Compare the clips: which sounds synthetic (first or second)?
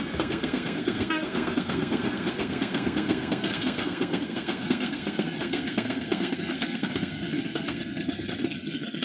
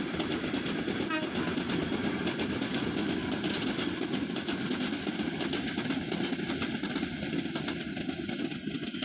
first